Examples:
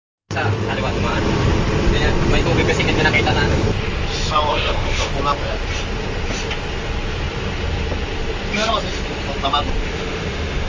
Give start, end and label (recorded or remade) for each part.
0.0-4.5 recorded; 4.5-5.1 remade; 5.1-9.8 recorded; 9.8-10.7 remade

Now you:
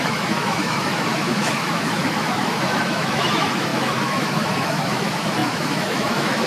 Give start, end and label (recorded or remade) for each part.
0.0-6.5 remade